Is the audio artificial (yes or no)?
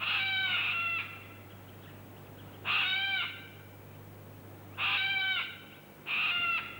no